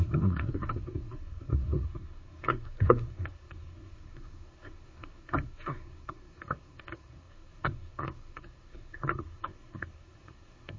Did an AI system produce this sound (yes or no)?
yes